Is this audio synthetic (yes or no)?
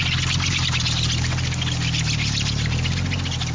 no